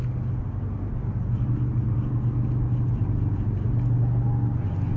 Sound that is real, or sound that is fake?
real